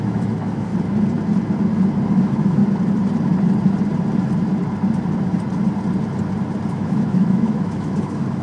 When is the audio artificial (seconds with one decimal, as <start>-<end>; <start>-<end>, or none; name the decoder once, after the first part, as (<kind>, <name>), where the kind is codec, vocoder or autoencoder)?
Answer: 0.0-0.7 (autoencoder, DAC-VAE); 2.1-2.6; 6.7-8.4